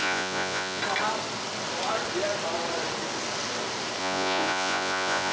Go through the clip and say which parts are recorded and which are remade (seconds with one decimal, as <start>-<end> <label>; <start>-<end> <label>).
0.0-0.8 remade; 0.8-4.0 recorded; 4.0-5.3 remade

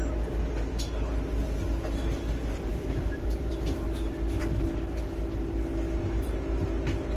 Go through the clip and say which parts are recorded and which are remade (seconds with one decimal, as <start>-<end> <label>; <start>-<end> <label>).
0.0-2.7 recorded; 2.7-3.5 remade; 3.5-7.2 recorded

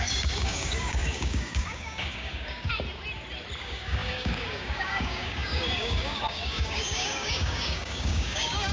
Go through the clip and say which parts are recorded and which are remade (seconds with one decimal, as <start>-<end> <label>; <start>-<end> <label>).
0.0-2.7 remade; 2.7-3.6 recorded; 3.6-8.7 remade

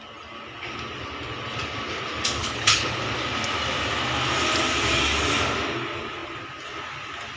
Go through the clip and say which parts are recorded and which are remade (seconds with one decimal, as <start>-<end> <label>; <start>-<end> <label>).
0.0-2.4 recorded; 2.4-3.0 remade; 3.0-7.4 recorded

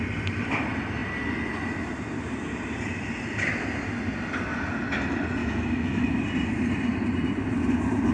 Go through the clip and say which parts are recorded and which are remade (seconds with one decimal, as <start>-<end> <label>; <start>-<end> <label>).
0.0-5.4 recorded; 5.4-6.2 remade; 6.2-8.1 recorded

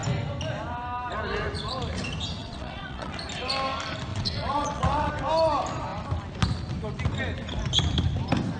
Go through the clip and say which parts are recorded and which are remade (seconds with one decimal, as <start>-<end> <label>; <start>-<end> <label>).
0.0-2.4 recorded; 2.4-3.1 remade; 3.1-4.1 recorded; 4.1-5.1 remade; 5.1-8.6 recorded

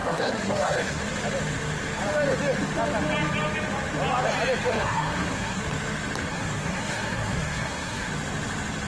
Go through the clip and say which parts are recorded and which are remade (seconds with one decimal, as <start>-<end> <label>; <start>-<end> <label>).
0.0-1.0 remade; 1.0-4.7 recorded; 4.7-5.6 remade; 5.6-6.3 recorded; 6.3-8.1 remade; 8.1-8.9 recorded